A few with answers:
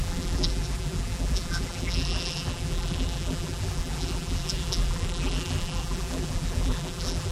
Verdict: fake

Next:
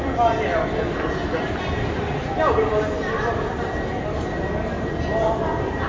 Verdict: real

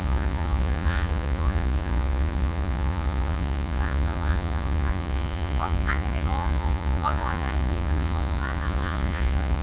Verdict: fake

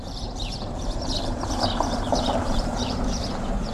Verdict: fake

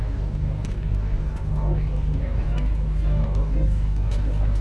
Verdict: fake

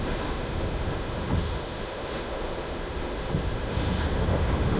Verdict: fake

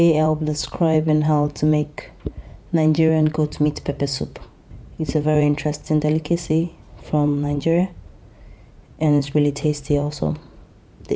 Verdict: fake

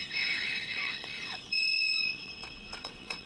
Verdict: fake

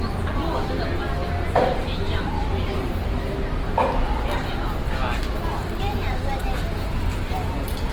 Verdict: real